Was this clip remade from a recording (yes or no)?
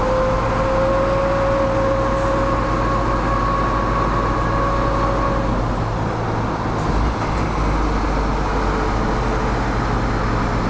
no